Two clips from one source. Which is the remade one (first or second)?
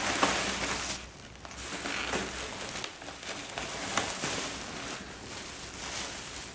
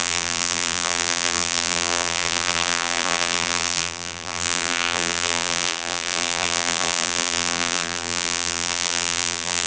second